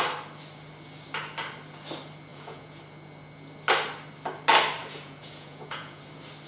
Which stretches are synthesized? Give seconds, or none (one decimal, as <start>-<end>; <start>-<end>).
2.3-2.8; 4.8-6.0